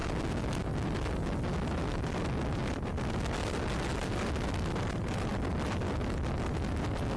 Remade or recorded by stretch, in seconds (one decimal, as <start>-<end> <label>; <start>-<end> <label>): 0.0-7.2 recorded